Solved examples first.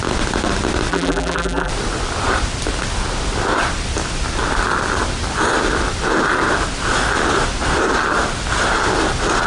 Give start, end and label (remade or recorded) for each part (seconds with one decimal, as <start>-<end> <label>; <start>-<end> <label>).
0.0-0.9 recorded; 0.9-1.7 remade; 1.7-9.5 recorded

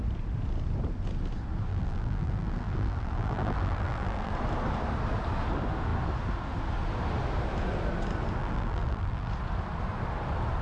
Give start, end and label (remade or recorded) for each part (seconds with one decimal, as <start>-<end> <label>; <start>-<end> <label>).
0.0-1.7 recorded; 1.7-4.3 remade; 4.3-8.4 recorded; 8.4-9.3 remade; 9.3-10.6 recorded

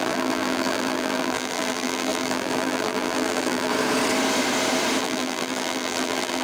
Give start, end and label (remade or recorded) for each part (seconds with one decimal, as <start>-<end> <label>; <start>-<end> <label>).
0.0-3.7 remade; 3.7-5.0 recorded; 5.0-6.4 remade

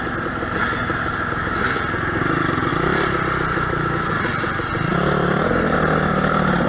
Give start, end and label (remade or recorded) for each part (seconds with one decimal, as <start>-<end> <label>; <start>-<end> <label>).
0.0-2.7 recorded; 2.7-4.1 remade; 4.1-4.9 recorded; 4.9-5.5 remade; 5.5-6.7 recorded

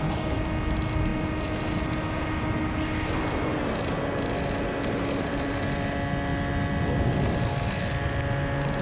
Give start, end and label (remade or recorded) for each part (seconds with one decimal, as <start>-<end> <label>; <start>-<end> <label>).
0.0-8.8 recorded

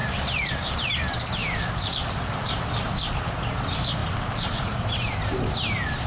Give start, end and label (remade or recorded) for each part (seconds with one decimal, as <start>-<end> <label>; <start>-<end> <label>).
0.0-1.4 recorded; 1.4-3.1 remade; 3.1-4.0 recorded; 4.0-6.1 remade

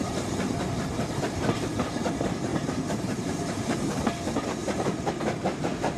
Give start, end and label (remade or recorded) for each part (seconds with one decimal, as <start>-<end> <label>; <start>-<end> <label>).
0.0-2.5 recorded; 2.5-4.0 remade; 4.0-4.6 recorded; 4.6-5.1 remade; 5.1-6.0 recorded